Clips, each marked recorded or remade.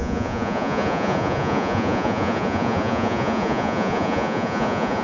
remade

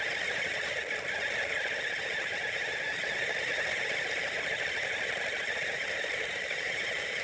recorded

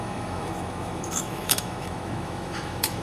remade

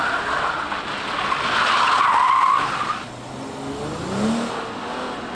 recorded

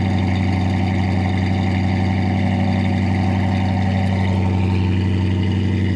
recorded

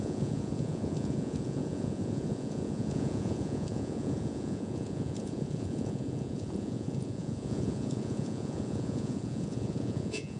remade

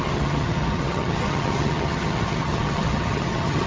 remade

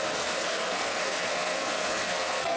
remade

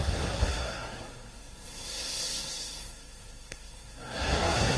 remade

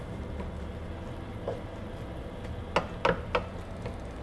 recorded